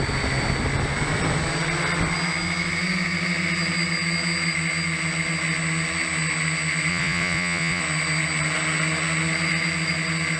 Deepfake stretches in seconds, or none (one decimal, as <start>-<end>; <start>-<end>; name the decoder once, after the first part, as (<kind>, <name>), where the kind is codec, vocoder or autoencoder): 6.9-7.8 (vocoder, Vocos)